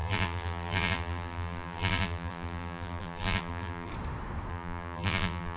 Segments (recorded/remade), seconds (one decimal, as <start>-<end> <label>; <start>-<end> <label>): 0.0-3.9 remade; 3.9-4.5 recorded; 4.5-5.6 remade